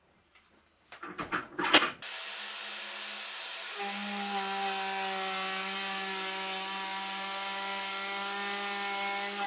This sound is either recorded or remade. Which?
recorded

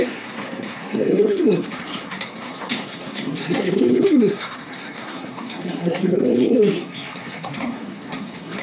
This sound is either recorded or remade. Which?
remade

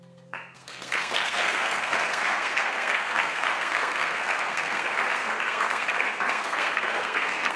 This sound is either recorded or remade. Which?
remade